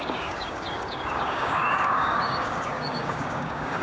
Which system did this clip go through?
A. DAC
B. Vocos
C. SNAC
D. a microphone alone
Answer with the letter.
A